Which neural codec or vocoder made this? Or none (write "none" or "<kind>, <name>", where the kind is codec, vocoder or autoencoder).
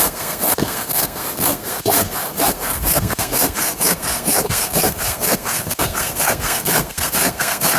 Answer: codec, SNAC